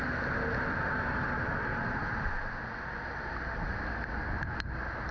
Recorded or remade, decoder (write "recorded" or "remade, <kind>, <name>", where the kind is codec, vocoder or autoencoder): recorded